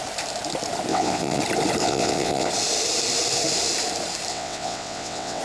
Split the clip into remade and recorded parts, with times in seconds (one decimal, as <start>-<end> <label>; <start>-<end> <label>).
0.0-0.9 recorded; 0.9-1.4 remade; 1.4-1.8 recorded; 1.8-2.5 remade; 2.5-4.3 recorded; 4.3-5.4 remade